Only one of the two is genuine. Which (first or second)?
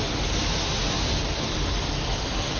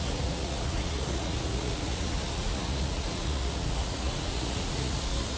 first